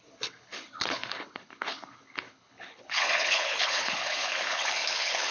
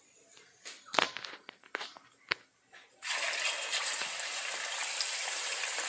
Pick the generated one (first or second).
first